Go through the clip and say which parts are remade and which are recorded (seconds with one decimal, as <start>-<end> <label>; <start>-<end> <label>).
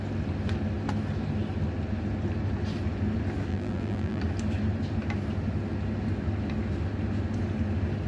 0.0-3.5 recorded; 3.5-4.2 remade; 4.2-8.1 recorded